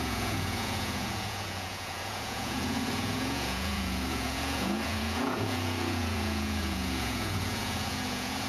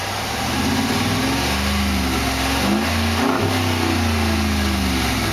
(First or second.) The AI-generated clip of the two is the first